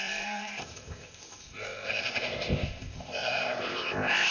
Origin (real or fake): fake